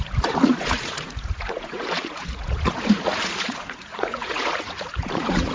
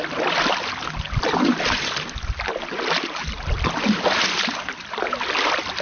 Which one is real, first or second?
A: second